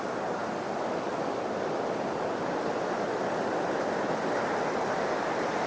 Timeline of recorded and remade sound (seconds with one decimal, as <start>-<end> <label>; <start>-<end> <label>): 0.0-5.7 recorded